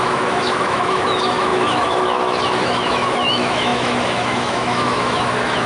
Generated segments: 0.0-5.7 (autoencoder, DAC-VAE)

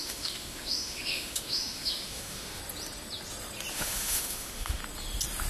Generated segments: 0.0-2.6 (autoencoder, DAC-VAE); 3.7-4.8

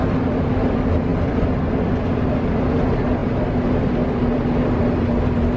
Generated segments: none